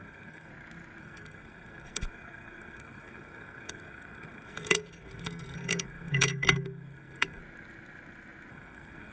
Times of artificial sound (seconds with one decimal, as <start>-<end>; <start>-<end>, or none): 0.0-0.5; 1.0-7.4; 8.5-9.1